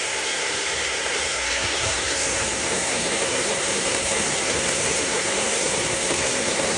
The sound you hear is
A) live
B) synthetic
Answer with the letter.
B